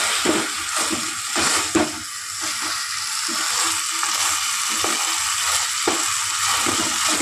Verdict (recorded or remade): recorded